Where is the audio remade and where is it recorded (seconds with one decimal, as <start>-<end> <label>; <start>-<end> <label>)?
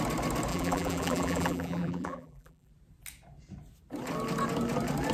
0.0-0.5 recorded; 0.5-2.7 remade; 2.7-5.1 recorded